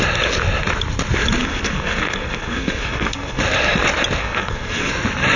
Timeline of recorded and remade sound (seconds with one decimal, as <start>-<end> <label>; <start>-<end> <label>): 0.0-1.4 recorded; 1.4-3.4 remade; 3.4-4.2 recorded; 4.2-4.9 remade; 4.9-5.4 recorded